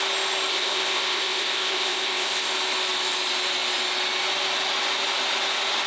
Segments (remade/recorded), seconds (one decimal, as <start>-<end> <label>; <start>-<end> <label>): 0.0-0.5 recorded; 0.5-2.5 remade; 2.5-5.9 recorded